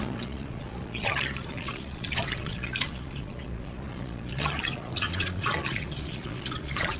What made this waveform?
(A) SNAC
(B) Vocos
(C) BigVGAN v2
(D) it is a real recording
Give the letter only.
B